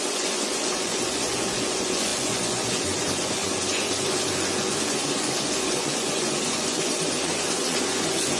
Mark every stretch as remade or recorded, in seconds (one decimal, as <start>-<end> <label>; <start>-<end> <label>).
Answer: 0.0-8.4 remade